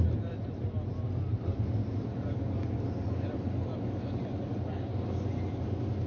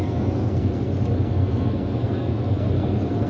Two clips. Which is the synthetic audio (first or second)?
second